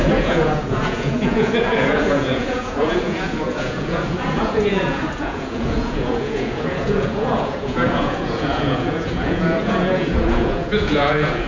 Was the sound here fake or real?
fake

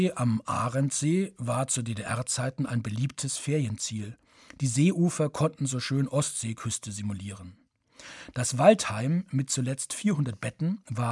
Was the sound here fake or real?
real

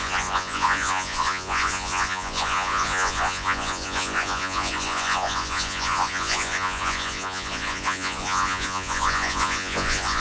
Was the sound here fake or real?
fake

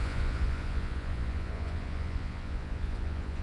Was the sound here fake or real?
fake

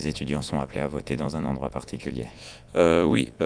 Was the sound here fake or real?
fake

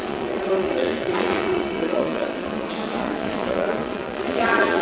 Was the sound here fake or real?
fake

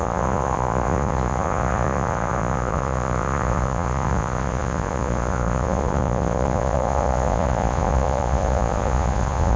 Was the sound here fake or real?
fake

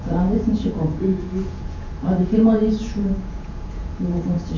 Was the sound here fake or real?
fake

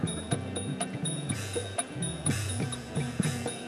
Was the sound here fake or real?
fake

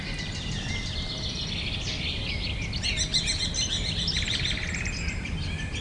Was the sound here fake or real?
real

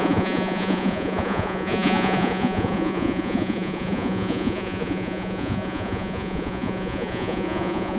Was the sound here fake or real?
fake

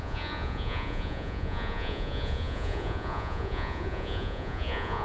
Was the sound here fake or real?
fake